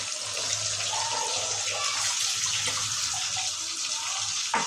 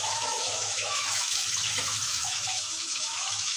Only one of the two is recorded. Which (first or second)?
first